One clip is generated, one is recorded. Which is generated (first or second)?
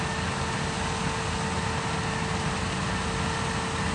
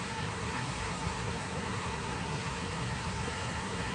second